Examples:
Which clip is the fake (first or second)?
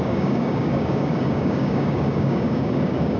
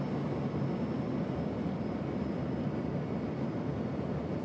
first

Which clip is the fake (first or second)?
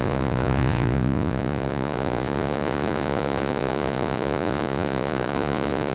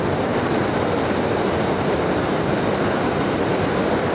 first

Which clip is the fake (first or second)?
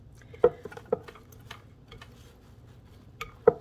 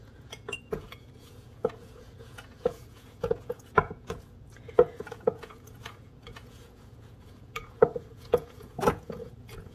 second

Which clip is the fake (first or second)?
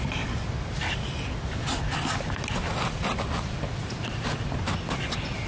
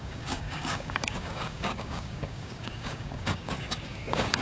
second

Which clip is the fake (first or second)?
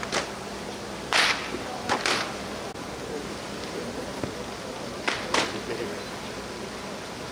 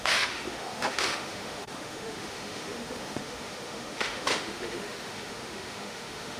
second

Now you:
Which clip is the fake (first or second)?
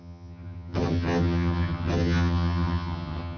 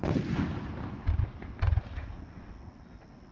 first